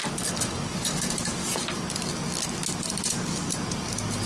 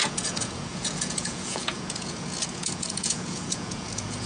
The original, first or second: first